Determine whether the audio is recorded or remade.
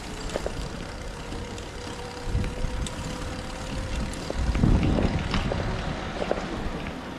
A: recorded